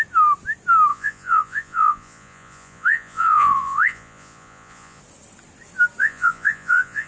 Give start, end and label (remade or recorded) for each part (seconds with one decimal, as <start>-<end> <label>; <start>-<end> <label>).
0.0-0.9 recorded; 0.9-5.0 remade; 5.0-6.0 recorded; 6.0-7.1 remade